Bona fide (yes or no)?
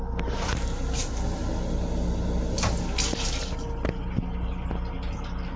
yes